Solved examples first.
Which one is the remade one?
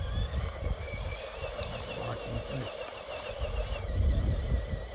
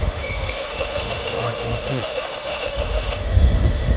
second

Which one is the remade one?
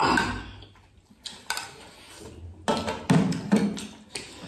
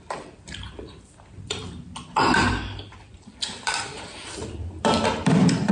second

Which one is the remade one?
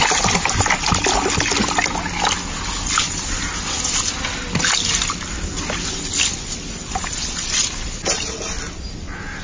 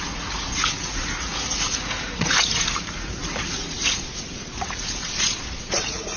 second